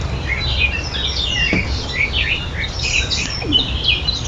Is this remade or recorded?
recorded